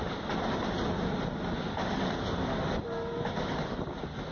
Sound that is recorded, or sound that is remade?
recorded